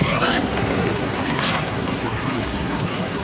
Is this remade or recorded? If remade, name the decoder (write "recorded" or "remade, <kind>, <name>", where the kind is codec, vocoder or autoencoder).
remade, codec, SNAC